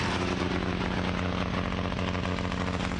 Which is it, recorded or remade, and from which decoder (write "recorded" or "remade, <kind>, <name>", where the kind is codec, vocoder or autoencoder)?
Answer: recorded